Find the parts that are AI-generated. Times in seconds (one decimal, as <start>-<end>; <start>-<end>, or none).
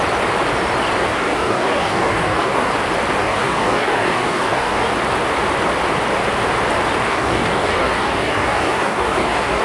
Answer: 1.1-2.7; 3.2-4.9; 7.1-9.6